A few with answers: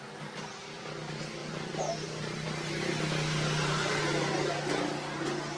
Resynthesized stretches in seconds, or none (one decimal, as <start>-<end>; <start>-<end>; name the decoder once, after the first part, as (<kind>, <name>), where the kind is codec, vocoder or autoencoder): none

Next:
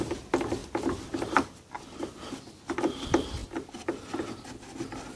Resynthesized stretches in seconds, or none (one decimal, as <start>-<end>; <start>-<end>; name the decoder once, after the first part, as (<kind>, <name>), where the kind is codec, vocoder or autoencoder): none

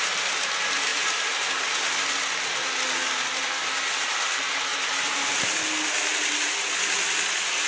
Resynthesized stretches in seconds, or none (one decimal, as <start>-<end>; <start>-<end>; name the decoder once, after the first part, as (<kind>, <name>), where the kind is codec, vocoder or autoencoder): 0.9-1.5 (vocoder, BigVGAN v2); 4.7-5.3